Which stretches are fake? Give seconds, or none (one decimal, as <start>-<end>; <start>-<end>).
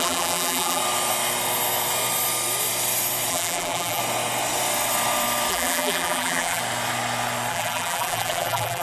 0.0-0.8; 3.3-4.0; 5.5-6.6; 7.5-8.8